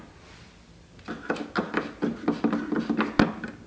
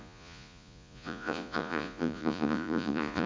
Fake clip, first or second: second